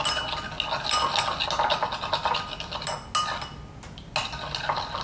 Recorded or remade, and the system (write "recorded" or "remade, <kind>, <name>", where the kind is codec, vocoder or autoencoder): recorded